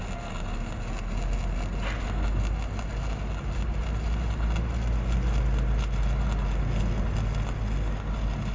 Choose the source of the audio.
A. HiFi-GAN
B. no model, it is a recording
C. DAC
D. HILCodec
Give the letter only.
B